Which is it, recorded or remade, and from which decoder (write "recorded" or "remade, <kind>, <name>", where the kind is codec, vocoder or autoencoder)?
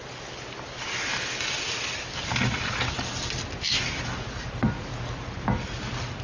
recorded